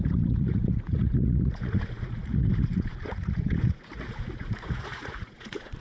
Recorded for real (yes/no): no